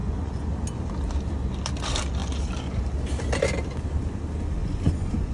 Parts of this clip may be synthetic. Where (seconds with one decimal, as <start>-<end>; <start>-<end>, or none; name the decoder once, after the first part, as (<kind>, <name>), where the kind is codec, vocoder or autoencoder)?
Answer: 0.0-0.5 (vocoder, Vocos); 4.6-5.3